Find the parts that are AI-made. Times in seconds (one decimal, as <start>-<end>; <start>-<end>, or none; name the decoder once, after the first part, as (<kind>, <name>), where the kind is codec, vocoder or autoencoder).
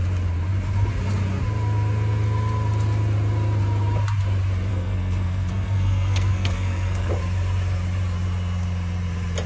4.7-7.1 (codec, SNAC)